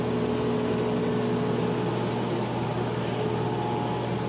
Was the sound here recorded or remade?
recorded